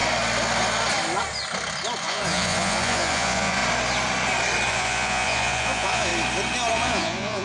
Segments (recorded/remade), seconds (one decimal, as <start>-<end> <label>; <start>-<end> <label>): 0.0-2.0 recorded; 2.0-3.6 remade; 3.6-4.7 recorded; 4.7-6.1 remade; 6.1-6.7 recorded; 6.7-7.4 remade